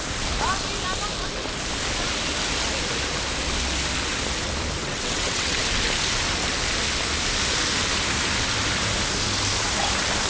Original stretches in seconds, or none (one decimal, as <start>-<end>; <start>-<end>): 0.0-4.8; 5.6-10.3